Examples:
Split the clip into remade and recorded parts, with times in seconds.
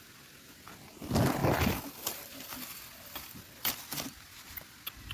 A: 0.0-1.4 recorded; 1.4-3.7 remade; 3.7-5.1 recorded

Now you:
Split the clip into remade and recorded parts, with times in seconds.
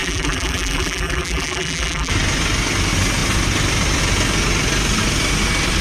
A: 0.0-2.1 remade; 2.1-5.8 recorded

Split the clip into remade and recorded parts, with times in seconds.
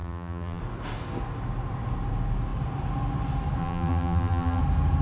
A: 0.0-0.6 remade; 0.6-3.6 recorded; 3.6-4.6 remade; 4.6-5.0 recorded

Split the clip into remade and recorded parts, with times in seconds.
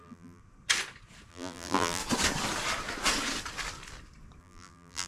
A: 0.0-0.4 remade; 0.4-1.3 recorded; 1.3-2.0 remade; 2.0-4.4 recorded; 4.4-5.1 remade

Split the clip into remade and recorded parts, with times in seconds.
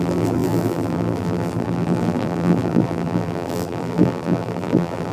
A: 0.0-5.1 remade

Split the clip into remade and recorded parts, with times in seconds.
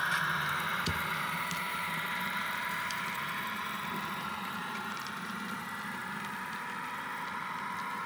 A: 0.0-0.7 recorded; 0.7-5.6 remade; 5.6-8.1 recorded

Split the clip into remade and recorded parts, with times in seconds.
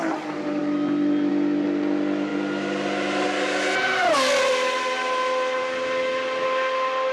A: 0.0-7.1 recorded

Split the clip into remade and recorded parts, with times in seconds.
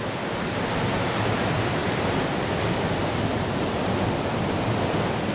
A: 0.0-3.3 recorded; 3.3-3.8 remade; 3.8-5.3 recorded